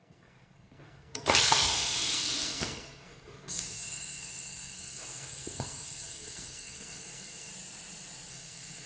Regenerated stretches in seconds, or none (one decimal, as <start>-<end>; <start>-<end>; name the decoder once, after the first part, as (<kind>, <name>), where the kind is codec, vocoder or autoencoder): 0.0-7.5 (codec, SNAC); 8.3-8.9